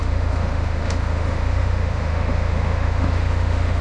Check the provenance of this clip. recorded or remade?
remade